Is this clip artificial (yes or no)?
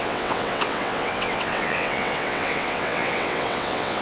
yes